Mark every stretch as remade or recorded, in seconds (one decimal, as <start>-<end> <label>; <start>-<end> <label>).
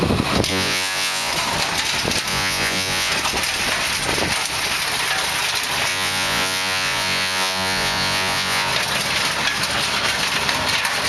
0.0-0.5 recorded; 0.5-1.3 remade; 1.3-2.3 recorded; 2.3-3.1 remade; 3.1-5.9 recorded; 5.9-8.7 remade; 8.7-11.1 recorded